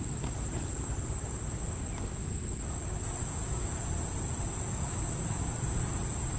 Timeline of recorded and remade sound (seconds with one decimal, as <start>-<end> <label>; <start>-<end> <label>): 0.0-3.2 recorded; 3.2-3.8 remade; 3.8-4.7 recorded; 4.7-5.5 remade; 5.5-6.4 recorded